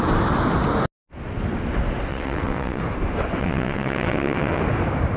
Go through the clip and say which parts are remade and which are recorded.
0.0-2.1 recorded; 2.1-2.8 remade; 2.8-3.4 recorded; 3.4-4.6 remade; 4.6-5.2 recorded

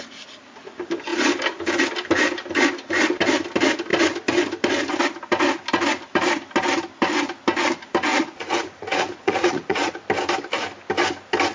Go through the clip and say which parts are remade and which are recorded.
0.0-8.1 recorded; 8.1-9.9 remade; 9.9-11.5 recorded

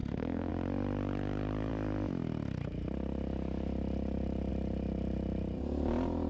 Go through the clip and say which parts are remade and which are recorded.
0.0-0.5 remade; 0.5-6.3 recorded

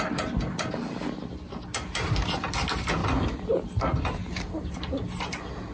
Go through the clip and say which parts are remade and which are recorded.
0.0-5.7 recorded

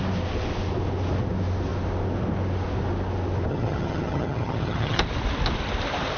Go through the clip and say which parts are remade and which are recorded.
0.0-3.5 recorded; 3.5-5.0 remade; 5.0-6.2 recorded

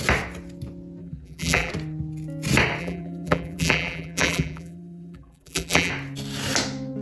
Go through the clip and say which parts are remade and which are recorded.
0.0-1.0 recorded; 1.0-1.7 remade; 1.7-2.8 recorded; 2.8-5.9 remade; 5.9-7.0 recorded

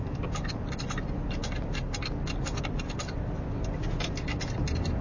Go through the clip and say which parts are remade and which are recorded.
0.0-5.0 recorded

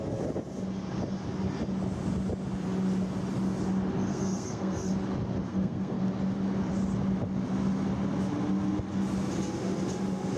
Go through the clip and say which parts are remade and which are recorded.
0.0-4.1 recorded; 4.1-4.9 remade; 4.9-5.5 recorded; 5.5-6.0 remade; 6.0-10.4 recorded